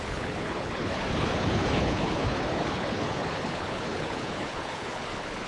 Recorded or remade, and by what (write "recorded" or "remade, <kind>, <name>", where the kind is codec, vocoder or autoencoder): remade, codec, HILCodec